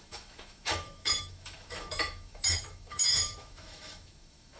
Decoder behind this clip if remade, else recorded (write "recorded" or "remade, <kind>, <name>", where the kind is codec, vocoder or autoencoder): remade, autoencoder, DAC-VAE